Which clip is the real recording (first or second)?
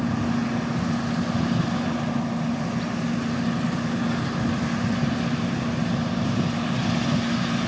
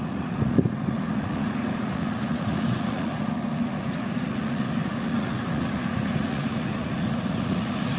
first